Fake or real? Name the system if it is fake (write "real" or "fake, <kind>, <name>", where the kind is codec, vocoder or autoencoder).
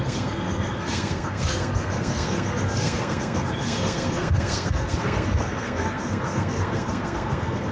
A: fake, codec, SNAC